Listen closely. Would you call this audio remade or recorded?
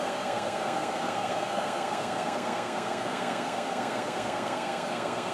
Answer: remade